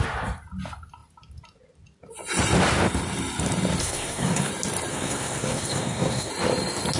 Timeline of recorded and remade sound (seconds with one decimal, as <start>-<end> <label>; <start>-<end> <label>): 0.0-3.8 recorded; 3.8-4.5 remade; 4.5-4.9 recorded; 4.9-6.3 remade; 6.3-7.0 recorded